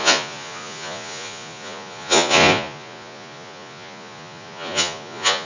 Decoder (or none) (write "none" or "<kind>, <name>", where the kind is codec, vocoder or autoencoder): vocoder, Vocos